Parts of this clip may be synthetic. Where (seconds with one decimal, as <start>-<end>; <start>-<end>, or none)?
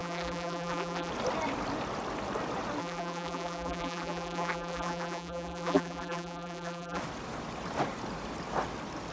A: 0.0-1.1; 2.8-7.0